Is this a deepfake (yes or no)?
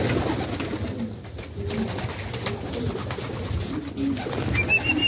no